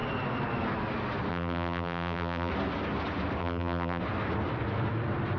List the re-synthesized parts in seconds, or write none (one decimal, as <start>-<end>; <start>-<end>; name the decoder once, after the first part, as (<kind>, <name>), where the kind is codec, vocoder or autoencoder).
1.3-2.5 (vocoder, BigVGAN v2); 3.4-4.0

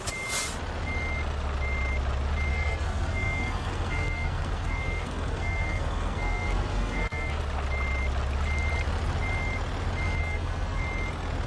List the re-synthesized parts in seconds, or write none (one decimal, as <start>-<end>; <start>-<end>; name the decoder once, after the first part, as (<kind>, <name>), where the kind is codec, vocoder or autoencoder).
2.5-7.4 (codec, SNAC); 10.2-10.8

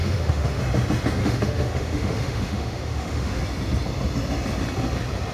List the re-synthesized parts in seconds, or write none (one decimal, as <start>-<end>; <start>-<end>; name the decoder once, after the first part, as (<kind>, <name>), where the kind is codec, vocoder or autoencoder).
0.0-0.6 (autoencoder, DAC-VAE); 1.2-3.4

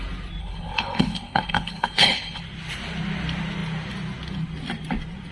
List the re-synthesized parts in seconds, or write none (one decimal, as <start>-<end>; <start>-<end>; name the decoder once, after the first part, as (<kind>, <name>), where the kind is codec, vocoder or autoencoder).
0.4-2.4 (codec, HILCodec)

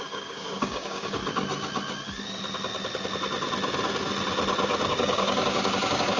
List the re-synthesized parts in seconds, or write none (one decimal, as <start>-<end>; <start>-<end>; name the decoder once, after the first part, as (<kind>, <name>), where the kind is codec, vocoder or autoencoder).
0.0-1.2 (codec, DAC); 4.9-6.2

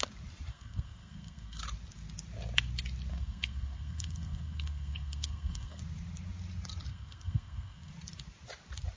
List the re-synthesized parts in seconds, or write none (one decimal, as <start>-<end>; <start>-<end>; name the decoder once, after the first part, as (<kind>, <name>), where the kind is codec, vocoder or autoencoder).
0.5-1.6 (codec, SNAC); 3.1-5.8; 6.9-7.9

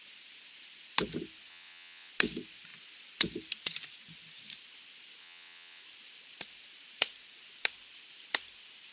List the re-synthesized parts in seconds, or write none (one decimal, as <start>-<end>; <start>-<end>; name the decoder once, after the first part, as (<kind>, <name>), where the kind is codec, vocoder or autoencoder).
1.5-2.1 (vocoder, WaveNeXt); 5.2-5.8